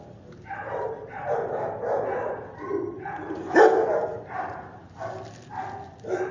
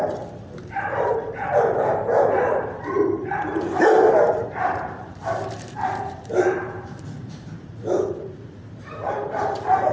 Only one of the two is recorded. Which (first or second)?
first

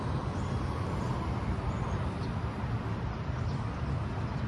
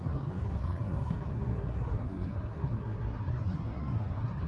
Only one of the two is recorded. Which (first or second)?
first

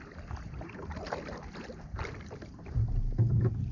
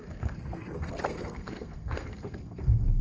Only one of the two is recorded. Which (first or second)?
first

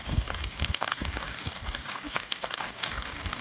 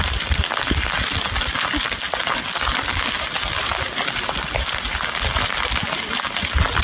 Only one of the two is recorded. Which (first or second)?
second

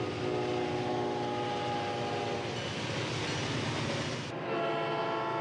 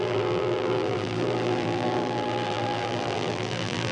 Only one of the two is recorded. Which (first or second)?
first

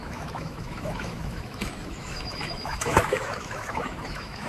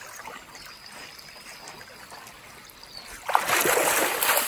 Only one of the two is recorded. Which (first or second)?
second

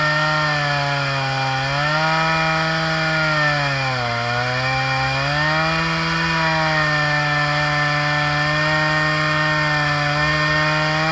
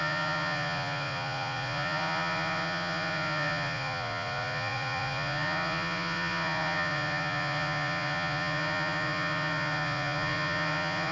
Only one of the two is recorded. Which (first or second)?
first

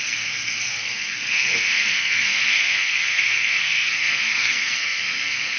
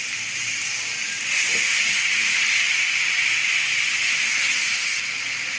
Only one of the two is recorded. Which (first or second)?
second